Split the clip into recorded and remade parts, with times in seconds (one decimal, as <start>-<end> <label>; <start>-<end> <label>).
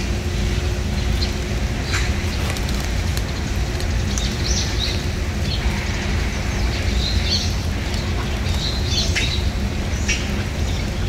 0.0-11.1 recorded